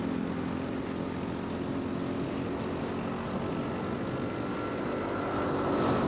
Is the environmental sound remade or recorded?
recorded